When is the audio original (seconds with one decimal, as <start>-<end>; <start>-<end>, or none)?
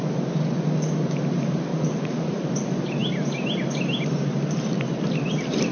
0.0-1.7; 2.5-5.7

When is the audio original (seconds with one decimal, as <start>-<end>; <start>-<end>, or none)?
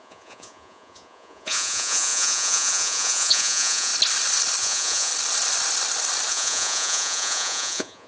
3.9-4.6; 5.1-6.3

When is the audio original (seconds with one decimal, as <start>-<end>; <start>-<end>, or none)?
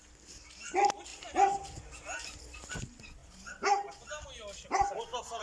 0.0-5.4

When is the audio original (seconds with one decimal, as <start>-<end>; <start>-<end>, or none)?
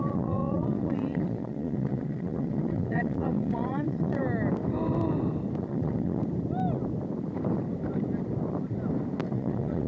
4.2-5.6; 6.2-9.3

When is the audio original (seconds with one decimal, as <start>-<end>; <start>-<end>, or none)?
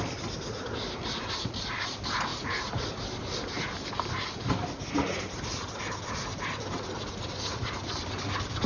0.0-2.3; 2.9-8.7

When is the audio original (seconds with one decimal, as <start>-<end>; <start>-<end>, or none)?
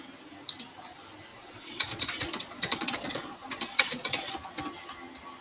0.0-1.3; 4.3-5.4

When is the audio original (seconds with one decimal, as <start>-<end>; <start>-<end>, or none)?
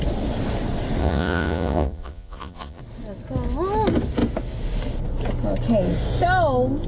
0.0-1.0; 2.8-6.9